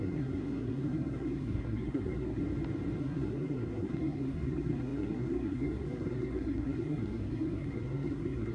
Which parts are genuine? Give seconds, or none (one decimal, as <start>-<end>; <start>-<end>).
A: 2.4-3.0